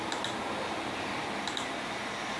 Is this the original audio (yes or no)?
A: yes